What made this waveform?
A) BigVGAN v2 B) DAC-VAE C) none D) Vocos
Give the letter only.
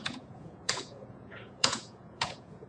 D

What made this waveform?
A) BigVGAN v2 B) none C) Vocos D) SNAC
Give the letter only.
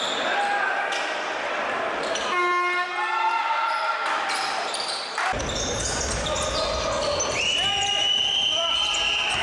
B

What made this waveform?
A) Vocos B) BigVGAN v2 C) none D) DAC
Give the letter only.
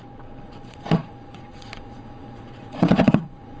A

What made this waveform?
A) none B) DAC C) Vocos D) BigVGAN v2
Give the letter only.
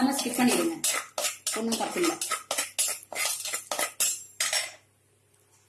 A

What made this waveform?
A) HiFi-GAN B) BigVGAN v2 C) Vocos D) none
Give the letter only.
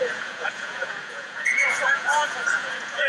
C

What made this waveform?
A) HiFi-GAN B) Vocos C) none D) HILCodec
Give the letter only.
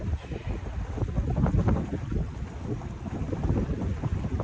C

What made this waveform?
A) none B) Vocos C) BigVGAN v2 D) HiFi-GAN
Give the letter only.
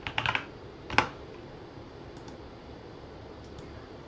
A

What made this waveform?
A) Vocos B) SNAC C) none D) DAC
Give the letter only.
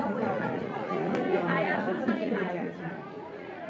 A